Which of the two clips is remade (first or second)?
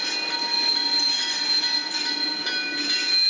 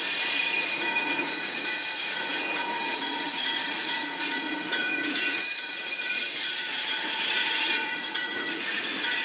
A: second